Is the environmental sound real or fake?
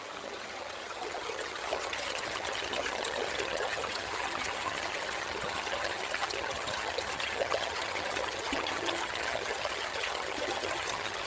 fake